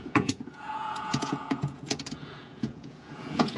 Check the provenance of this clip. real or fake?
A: fake